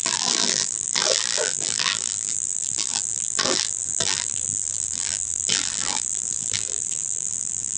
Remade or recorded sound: remade